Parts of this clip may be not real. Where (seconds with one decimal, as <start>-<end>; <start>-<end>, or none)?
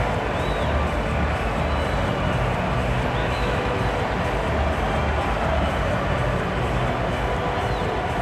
3.2-3.8